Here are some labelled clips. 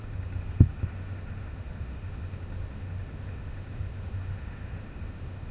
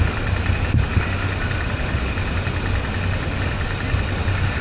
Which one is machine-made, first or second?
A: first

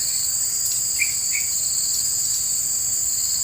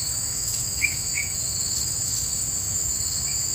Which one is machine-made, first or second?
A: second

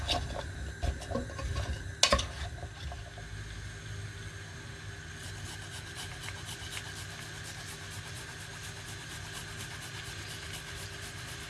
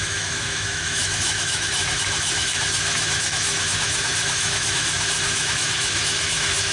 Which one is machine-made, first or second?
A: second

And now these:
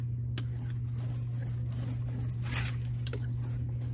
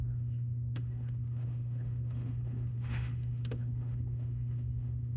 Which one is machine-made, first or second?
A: second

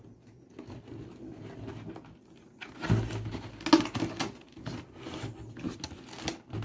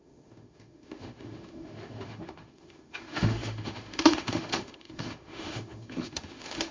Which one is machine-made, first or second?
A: second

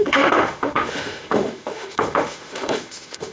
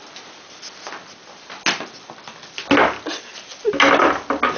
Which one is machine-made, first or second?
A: first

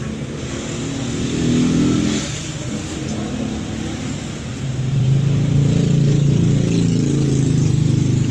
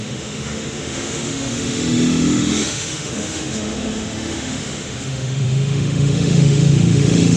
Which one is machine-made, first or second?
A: second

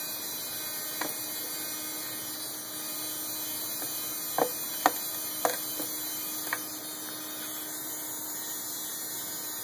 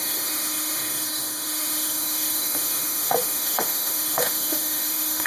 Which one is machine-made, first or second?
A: second